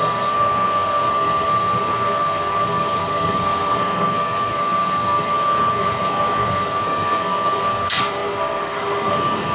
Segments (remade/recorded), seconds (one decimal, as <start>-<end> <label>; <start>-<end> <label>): 0.0-9.5 remade